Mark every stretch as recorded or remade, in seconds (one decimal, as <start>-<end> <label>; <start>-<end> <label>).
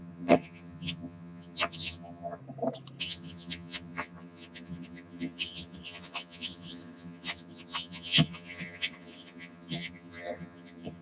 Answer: 0.0-2.4 remade; 2.4-3.0 recorded; 3.0-11.0 remade